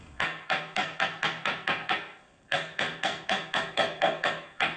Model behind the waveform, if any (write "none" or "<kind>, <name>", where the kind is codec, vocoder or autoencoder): codec, SNAC